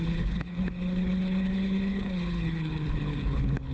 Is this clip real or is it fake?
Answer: fake